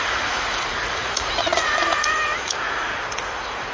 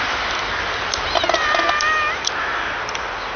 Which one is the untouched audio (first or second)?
second